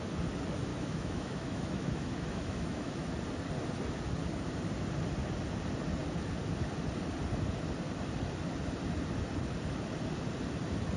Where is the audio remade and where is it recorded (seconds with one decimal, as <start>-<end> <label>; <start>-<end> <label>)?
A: 0.0-0.7 recorded; 0.7-3.1 remade; 3.1-11.0 recorded